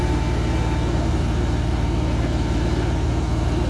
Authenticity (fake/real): real